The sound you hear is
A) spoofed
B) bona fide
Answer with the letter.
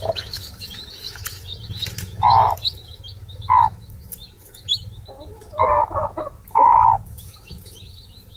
A